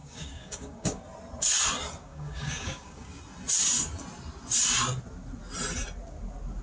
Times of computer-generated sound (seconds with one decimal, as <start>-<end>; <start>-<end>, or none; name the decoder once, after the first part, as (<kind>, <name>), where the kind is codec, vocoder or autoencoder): 0.0-1.0 (codec, DAC); 2.0-3.2